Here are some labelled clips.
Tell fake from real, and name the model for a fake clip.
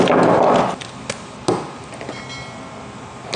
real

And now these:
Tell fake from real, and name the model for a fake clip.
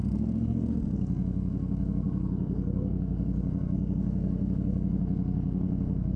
fake, codec, SNAC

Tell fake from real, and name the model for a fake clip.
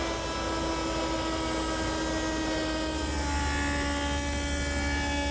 real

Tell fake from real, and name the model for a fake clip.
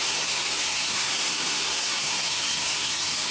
fake, codec, SNAC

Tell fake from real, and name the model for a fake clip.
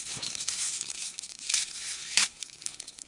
fake, codec, SNAC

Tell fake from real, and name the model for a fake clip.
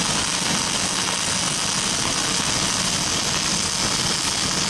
real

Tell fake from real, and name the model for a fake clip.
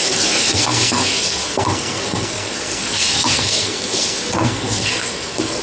fake, codec, SNAC